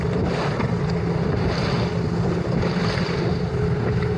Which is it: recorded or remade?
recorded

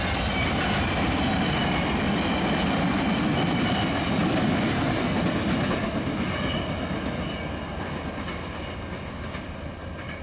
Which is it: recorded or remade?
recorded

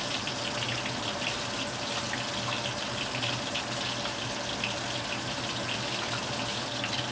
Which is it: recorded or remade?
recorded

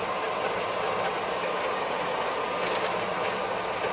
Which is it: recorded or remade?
recorded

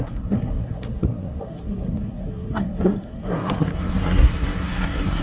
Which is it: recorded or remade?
remade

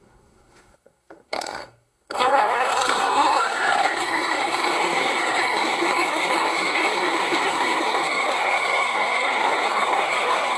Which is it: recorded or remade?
remade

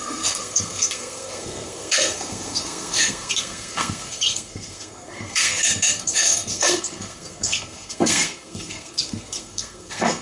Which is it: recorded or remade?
remade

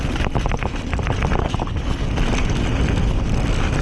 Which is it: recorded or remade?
recorded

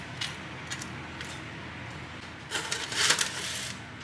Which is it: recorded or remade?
recorded